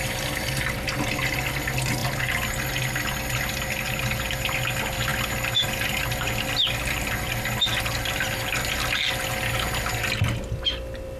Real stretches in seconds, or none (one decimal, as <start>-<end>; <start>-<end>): 0.0-11.2

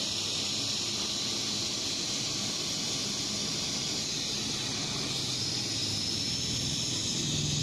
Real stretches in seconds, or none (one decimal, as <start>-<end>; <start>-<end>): 0.0-7.6

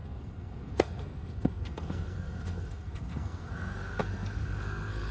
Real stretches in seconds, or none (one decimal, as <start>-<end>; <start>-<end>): none

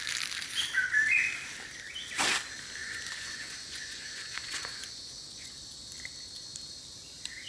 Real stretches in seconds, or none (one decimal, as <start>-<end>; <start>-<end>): 0.0-2.8; 5.5-7.5

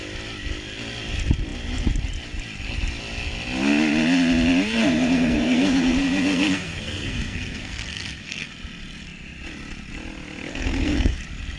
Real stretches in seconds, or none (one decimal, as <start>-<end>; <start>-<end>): 0.0-4.8; 8.5-10.5; 11.2-11.6

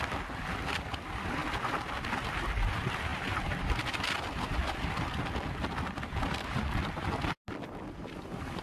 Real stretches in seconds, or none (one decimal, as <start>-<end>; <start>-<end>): 0.0-8.6